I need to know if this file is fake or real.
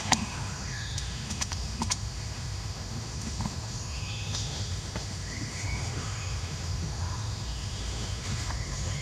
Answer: fake